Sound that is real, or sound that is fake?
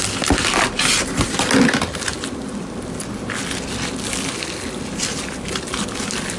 real